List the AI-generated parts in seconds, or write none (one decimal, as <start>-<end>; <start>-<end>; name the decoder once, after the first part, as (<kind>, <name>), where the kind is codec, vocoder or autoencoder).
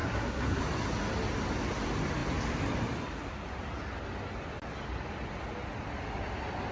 0.0-0.6 (codec, SNAC)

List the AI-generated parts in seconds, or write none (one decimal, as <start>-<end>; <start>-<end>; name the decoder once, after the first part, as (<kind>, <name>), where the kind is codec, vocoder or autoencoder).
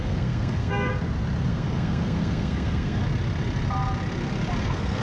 0.0-0.9 (codec, SNAC); 1.5-3.0; 4.6-5.0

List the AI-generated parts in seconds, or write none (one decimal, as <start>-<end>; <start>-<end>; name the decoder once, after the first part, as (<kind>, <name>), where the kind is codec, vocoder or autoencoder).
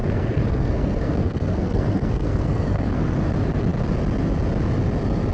0.0-3.2 (codec, SNAC)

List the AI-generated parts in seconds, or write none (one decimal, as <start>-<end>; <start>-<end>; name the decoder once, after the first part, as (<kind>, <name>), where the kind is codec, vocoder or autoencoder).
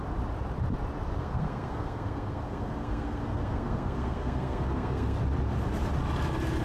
1.2-5.2 (codec, SNAC)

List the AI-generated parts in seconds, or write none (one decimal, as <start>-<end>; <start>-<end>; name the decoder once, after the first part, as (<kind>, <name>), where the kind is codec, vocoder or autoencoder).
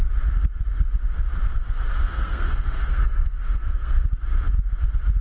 2.1-4.0 (codec, SNAC)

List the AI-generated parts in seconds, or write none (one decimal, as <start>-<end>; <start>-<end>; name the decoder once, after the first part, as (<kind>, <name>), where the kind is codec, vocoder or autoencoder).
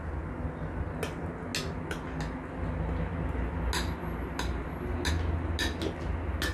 none